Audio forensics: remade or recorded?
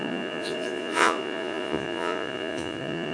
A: remade